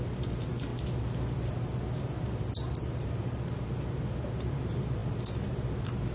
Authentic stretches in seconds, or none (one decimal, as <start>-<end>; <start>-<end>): 0.0-6.1

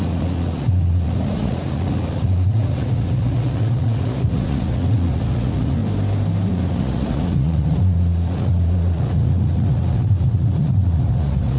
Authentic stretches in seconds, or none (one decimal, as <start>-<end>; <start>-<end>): 5.8-6.5

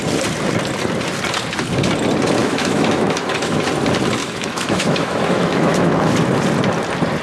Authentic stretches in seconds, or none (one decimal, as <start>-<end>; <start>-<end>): 0.0-2.4; 3.6-4.2; 6.1-7.2